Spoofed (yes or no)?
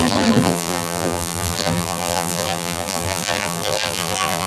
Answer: yes